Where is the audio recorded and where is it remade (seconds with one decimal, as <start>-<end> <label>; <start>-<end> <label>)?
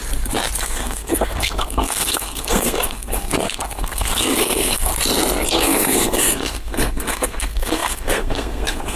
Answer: 0.0-0.6 recorded; 0.6-4.9 remade; 4.9-5.5 recorded; 5.5-9.0 remade